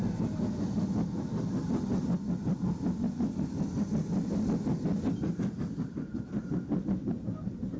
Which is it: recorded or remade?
recorded